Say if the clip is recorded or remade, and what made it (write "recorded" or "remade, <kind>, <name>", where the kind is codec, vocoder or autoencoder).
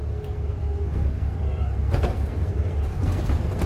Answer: remade, codec, SNAC